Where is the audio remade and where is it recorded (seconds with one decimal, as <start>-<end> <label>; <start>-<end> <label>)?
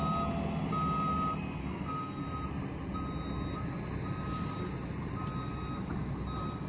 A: 0.0-1.6 recorded; 1.6-2.2 remade; 2.2-6.7 recorded